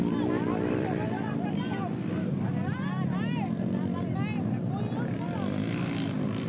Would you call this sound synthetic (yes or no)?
no